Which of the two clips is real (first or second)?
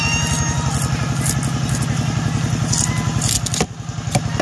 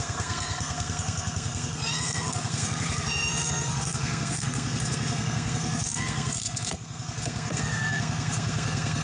first